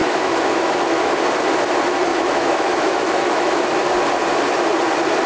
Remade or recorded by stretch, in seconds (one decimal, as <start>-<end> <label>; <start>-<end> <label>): 0.0-1.1 remade; 1.1-2.1 recorded; 2.1-3.6 remade; 3.6-5.3 recorded